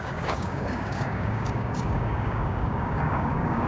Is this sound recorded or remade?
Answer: remade